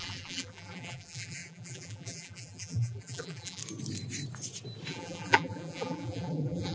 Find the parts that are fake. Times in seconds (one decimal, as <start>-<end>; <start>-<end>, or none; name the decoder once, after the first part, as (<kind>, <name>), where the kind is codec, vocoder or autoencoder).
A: 0.0-3.6 (vocoder, BigVGAN v2); 4.9-6.7